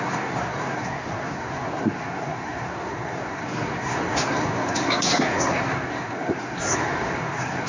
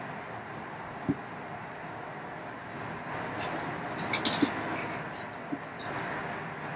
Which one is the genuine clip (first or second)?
second